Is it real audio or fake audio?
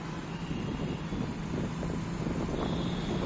real